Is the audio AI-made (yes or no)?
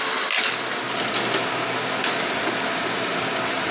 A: no